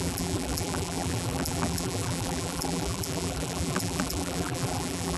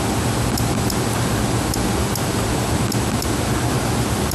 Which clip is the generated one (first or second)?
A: first